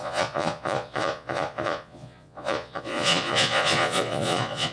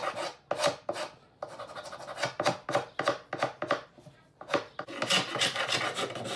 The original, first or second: second